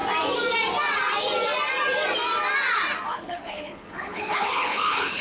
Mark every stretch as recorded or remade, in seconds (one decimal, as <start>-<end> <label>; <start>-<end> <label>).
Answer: 0.0-3.1 recorded; 3.1-5.2 remade